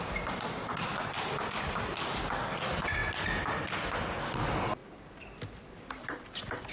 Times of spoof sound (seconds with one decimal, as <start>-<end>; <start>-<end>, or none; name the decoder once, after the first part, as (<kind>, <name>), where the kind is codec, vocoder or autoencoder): none